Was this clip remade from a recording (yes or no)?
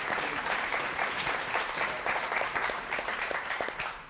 yes